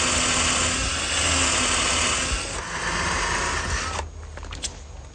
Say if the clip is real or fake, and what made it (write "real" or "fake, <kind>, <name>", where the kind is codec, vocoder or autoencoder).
real